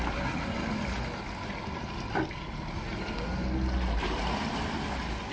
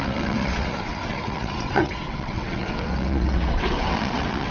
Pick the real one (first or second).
first